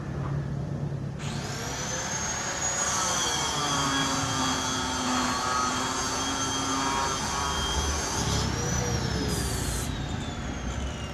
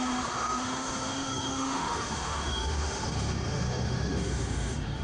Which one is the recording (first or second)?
first